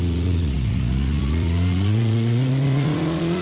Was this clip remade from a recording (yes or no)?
yes